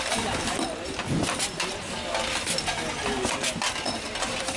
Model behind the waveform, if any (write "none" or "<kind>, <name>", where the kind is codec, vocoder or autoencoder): none